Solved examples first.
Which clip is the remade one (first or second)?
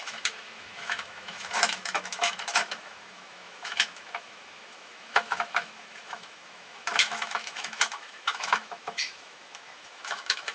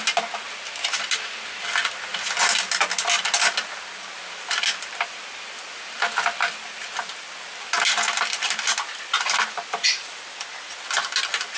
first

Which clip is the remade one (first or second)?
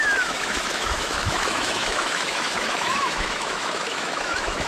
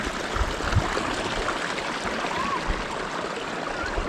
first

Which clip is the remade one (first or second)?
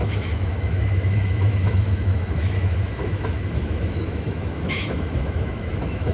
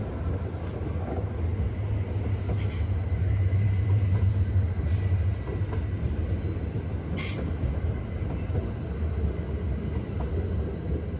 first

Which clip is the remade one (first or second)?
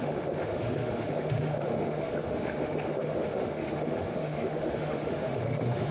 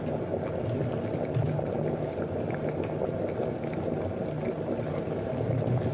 first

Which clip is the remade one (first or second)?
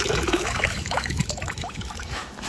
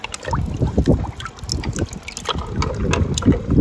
first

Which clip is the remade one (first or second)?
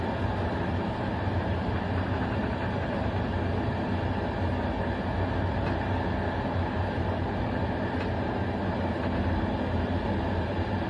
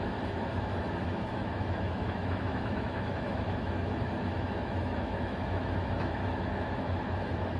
second